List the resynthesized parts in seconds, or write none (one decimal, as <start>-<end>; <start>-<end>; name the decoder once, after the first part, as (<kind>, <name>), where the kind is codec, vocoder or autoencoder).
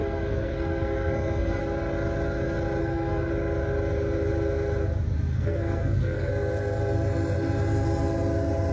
0.0-1.6 (codec, SNAC); 2.8-3.3; 5.3-6.3